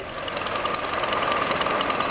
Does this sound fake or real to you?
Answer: real